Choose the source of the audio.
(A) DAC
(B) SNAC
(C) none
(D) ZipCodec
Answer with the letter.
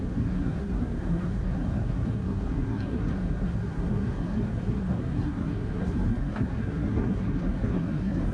B